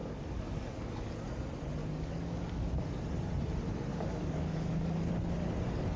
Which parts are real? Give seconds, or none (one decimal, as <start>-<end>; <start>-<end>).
1.1-1.8; 2.8-3.9; 5.1-6.0